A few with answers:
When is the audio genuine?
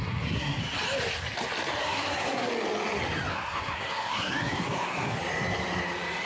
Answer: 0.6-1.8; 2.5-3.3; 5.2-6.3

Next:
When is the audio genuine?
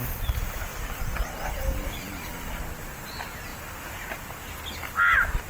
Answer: 0.0-5.5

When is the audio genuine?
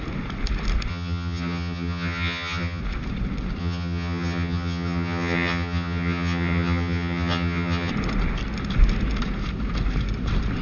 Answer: 0.0-0.9; 2.8-3.6; 7.9-10.6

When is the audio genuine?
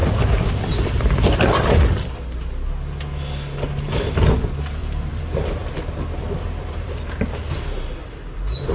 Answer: 2.7-4.8; 7.5-8.0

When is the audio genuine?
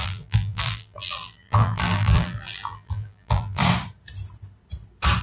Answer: 3.6-5.2